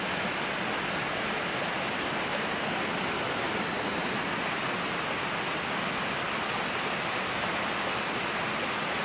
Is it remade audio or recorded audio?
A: recorded